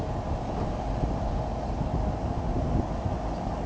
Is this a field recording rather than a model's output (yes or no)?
yes